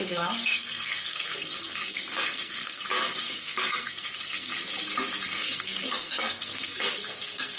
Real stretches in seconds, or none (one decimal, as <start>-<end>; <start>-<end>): 4.5-5.3